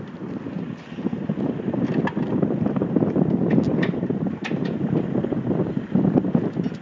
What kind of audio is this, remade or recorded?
recorded